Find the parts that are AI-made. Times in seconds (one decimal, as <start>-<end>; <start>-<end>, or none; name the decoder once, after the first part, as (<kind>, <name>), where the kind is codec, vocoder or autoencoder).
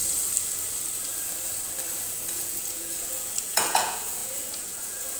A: 2.3-5.2 (vocoder, Vocos)